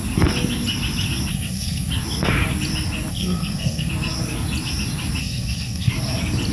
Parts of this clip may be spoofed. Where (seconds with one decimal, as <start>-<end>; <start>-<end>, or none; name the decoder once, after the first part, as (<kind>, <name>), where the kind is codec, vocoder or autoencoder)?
1.3-1.9 (codec, SNAC); 3.1-3.9; 5.2-5.9